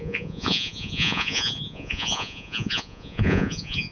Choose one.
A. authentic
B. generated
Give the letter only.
B